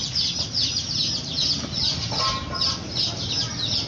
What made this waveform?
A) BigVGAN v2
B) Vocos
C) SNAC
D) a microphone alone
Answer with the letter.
D